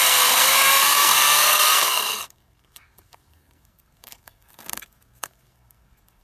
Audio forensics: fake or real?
fake